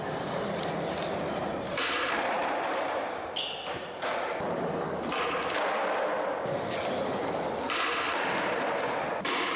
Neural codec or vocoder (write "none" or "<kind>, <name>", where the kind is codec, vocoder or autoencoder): none